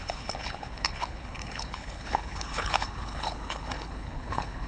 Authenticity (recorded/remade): remade